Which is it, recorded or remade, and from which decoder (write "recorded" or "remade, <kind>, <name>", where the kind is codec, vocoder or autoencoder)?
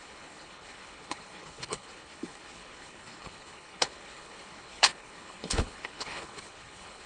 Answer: remade, codec, HILCodec